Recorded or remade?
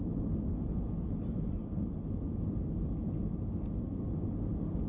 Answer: recorded